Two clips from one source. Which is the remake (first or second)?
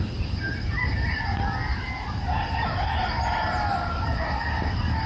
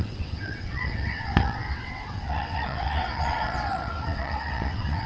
second